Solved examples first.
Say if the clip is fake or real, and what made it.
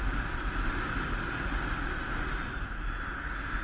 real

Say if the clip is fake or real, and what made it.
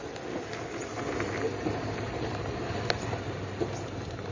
real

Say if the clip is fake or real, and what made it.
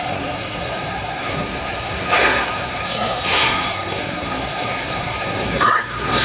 fake, codec, SNAC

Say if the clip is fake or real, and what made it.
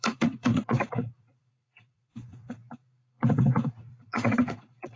fake, vocoder, Vocos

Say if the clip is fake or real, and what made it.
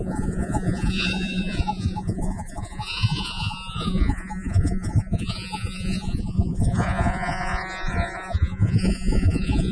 fake, vocoder, Vocos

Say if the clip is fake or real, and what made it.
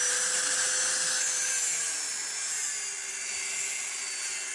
real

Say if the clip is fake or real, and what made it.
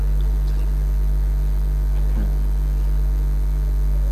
real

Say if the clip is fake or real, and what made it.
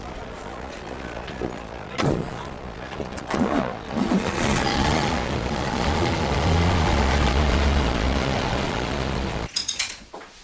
fake, vocoder, Vocos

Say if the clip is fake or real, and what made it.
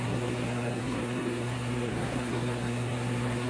fake, codec, SNAC